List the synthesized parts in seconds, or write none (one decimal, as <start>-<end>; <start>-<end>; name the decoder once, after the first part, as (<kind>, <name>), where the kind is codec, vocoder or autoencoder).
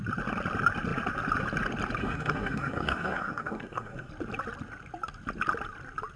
2.0-4.1 (codec, SNAC)